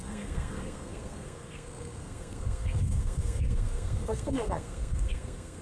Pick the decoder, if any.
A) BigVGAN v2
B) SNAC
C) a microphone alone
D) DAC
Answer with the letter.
B